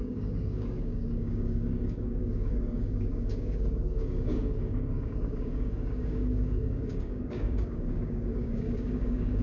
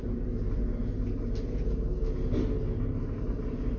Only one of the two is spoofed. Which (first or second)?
first